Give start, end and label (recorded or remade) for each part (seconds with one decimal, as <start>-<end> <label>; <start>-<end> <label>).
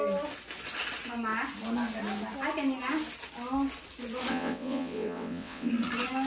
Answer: 0.0-4.3 recorded; 4.3-5.7 remade; 5.7-6.3 recorded